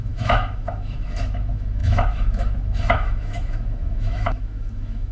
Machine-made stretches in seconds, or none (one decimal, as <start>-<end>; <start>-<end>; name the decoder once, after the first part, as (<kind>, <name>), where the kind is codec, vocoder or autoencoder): 0.0-5.1 (autoencoder, DAC-VAE)